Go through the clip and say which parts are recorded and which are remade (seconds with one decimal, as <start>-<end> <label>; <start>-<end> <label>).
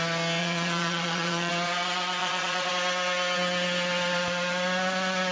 0.0-0.4 recorded; 0.4-1.5 remade; 1.5-2.2 recorded; 2.2-2.7 remade; 2.7-5.3 recorded